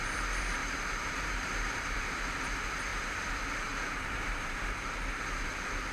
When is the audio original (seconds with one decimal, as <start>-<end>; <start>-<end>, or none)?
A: 0.0-0.6; 2.2-2.9